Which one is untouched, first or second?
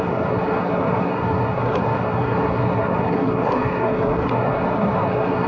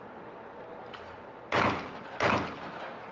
second